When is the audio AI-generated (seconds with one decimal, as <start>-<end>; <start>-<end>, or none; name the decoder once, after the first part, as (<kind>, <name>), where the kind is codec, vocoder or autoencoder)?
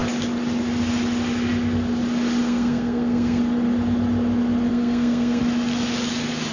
2.4-3.4 (codec, SNAC); 4.7-5.4